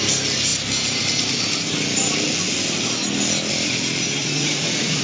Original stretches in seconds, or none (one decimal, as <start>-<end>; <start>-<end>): 0.0-4.2